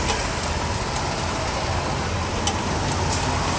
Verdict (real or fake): real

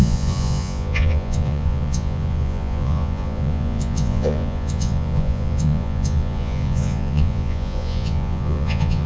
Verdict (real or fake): fake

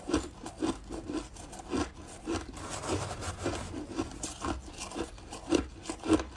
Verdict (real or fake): real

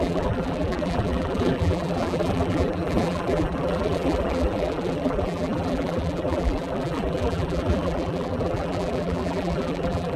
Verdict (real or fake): fake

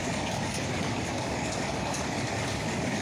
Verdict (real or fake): fake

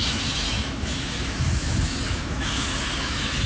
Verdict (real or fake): fake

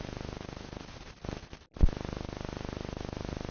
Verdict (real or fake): real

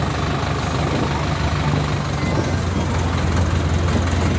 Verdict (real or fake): real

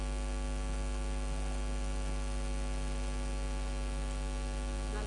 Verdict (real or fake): real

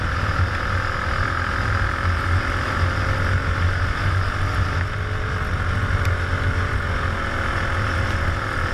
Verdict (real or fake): real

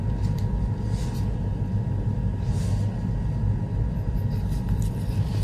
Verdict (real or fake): real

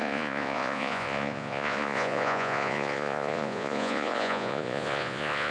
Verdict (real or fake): fake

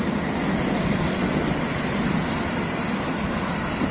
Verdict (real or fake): real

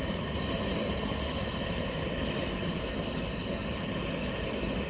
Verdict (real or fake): real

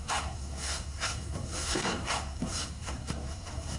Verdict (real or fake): fake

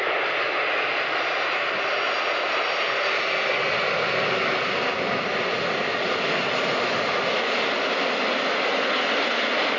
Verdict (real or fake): real